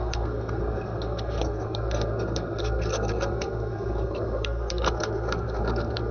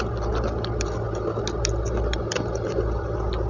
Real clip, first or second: second